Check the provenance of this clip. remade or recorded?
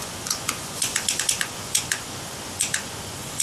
remade